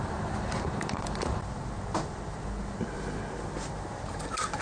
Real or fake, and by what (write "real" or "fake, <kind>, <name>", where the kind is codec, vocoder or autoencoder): real